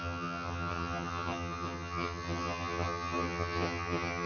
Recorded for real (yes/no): no